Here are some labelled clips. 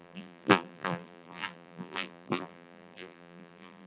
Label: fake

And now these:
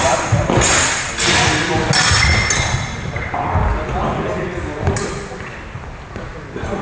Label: real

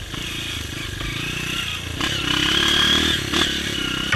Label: real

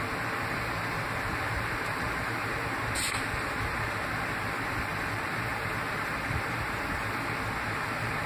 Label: fake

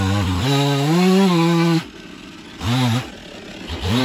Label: real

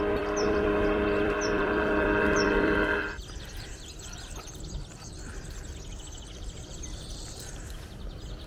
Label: fake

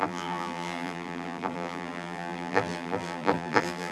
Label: fake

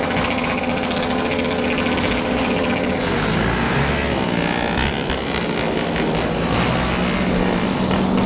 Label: real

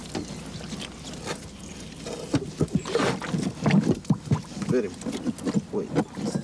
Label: real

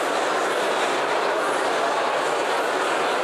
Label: real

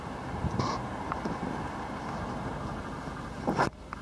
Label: fake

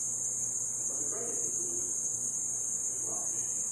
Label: real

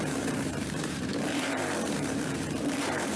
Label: fake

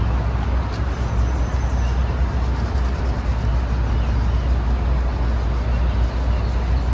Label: real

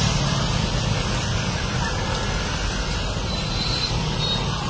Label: real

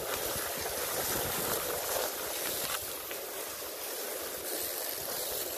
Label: real